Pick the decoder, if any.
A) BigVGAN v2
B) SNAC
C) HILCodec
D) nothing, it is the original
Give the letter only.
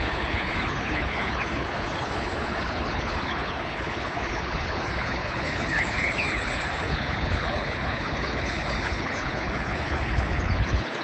C